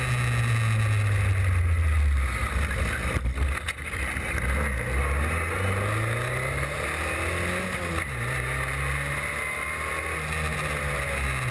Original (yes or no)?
yes